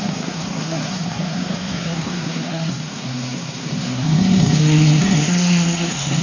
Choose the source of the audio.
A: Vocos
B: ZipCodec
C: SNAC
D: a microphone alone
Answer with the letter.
C